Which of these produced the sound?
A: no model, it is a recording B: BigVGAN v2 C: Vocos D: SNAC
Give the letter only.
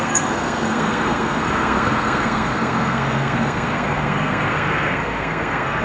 D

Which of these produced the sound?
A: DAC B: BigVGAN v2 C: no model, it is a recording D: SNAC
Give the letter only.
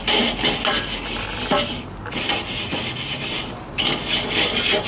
C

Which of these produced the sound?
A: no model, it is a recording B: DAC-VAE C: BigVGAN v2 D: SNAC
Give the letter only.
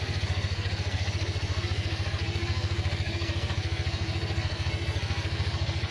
D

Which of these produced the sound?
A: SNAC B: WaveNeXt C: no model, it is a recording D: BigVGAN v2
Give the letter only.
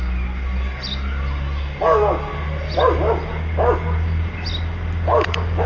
C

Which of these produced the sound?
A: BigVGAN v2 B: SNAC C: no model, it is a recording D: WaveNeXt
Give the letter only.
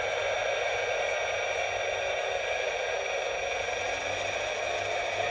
C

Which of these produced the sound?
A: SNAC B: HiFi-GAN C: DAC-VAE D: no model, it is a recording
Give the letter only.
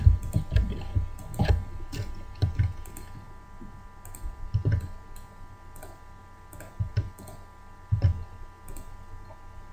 D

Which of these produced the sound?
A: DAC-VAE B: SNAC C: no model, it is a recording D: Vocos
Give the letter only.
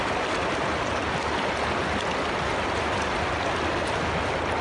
C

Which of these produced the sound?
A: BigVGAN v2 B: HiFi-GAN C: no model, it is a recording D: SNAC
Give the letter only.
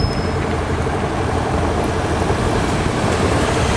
C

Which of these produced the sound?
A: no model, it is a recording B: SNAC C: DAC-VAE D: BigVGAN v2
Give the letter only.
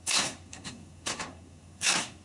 B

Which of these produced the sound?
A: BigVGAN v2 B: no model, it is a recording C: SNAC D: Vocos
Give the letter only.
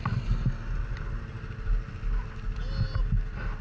B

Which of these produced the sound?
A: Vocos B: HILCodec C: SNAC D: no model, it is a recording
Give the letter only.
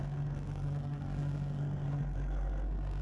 C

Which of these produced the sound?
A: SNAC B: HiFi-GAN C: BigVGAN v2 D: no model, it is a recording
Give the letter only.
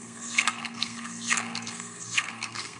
A